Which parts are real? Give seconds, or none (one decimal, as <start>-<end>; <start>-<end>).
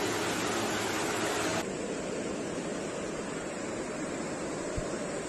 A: 0.0-5.3